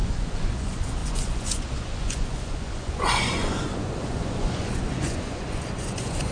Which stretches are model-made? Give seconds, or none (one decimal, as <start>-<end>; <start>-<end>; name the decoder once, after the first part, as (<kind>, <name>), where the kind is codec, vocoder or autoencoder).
0.0-6.3 (vocoder, Vocos)

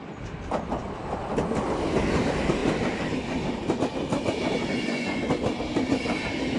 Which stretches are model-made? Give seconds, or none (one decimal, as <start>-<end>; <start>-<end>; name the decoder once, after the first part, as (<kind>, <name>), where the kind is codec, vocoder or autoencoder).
4.7-5.2 (vocoder, Vocos)

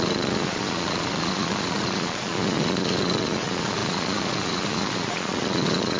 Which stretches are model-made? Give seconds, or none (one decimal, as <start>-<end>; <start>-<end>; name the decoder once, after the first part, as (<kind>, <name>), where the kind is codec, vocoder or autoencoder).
0.0-6.0 (vocoder, Vocos)

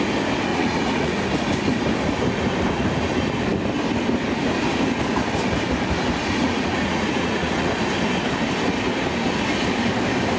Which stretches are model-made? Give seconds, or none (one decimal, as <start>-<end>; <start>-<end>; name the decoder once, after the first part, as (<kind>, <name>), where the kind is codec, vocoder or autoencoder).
0.5-1.2 (vocoder, Vocos); 6.2-7.7

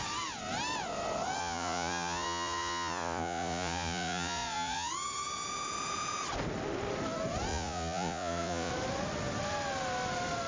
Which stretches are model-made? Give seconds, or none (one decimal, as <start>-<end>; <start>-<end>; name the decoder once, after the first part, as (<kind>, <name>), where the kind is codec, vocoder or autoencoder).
1.4-4.9 (vocoder, Vocos); 7.5-8.7

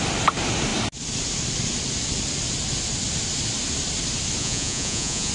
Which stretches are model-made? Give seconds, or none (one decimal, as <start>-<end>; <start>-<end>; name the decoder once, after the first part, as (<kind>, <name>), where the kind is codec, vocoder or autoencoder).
4.4-5.3 (vocoder, Vocos)

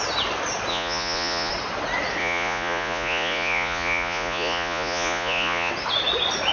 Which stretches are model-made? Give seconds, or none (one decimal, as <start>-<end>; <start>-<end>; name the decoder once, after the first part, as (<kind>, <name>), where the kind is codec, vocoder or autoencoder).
0.7-1.5 (vocoder, Vocos); 2.2-5.7